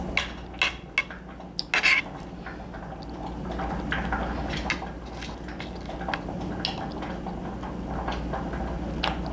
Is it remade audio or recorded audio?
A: recorded